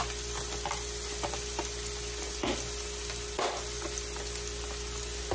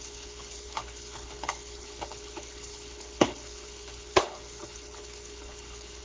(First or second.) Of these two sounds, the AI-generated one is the second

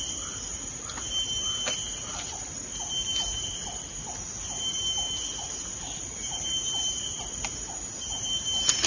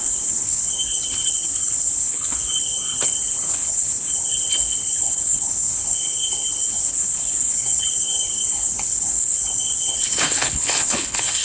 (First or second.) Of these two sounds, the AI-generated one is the second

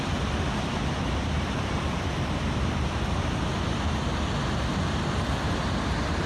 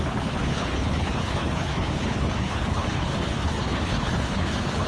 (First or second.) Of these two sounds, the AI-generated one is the second